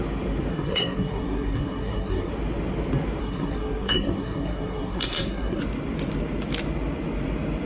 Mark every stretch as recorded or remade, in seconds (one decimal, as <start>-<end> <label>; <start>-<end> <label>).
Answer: 0.0-0.5 recorded; 0.5-2.3 remade; 2.3-3.2 recorded; 3.2-5.6 remade; 5.6-7.7 recorded